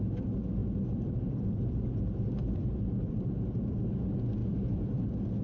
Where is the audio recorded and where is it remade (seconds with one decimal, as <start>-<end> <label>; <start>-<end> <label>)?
0.0-0.6 recorded; 0.6-3.8 remade; 3.8-4.4 recorded; 4.4-5.0 remade; 5.0-5.4 recorded